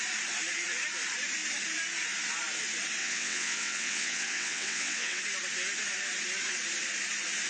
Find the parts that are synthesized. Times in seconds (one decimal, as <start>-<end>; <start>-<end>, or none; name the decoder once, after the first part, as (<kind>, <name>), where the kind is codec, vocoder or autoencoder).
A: 3.0-5.2 (vocoder, WaveNeXt)